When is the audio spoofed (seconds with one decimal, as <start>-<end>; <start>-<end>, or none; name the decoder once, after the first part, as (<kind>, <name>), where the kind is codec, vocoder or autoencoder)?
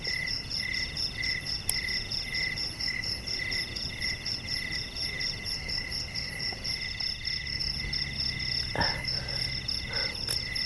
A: none